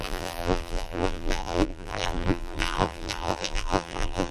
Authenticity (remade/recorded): remade